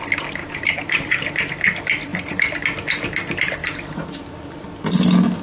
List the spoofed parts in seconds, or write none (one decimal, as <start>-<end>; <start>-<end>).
0.4-1.1; 2.1-2.6